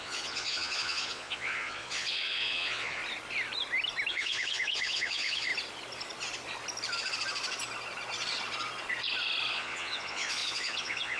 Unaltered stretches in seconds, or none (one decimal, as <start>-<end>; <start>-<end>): 3.0-4.1; 5.5-9.5